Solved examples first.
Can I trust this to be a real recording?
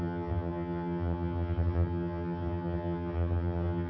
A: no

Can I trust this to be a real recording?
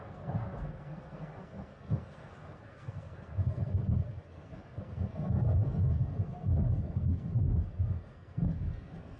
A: no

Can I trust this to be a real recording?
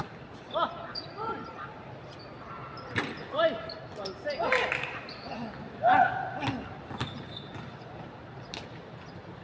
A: yes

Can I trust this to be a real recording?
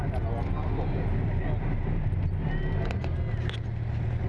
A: yes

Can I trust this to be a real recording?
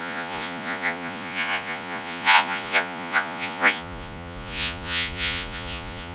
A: no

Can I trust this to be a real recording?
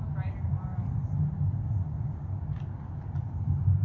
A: yes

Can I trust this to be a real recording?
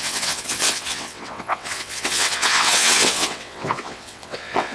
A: no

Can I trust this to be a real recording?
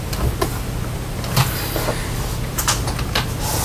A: yes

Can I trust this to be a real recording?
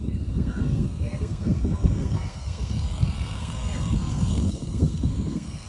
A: no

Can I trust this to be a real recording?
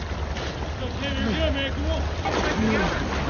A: yes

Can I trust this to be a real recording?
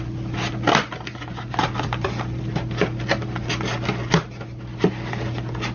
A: yes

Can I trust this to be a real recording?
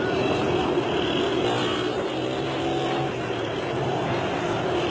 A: no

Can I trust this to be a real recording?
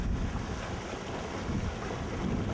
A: yes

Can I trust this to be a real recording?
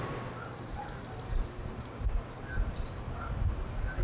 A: yes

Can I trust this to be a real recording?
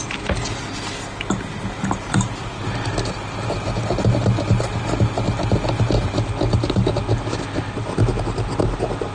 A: yes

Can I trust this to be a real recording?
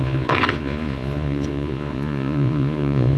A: no